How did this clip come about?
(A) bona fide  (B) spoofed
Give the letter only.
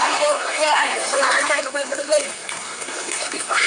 B